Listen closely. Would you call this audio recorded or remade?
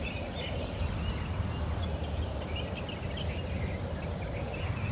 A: recorded